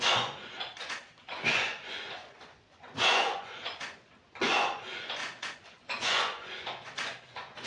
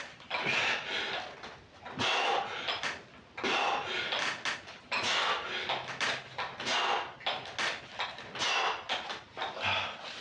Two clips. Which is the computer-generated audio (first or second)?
first